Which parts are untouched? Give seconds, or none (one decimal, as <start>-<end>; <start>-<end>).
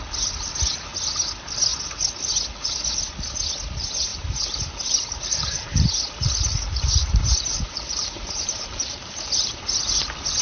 0.0-4.1; 6.0-6.5; 9.6-10.4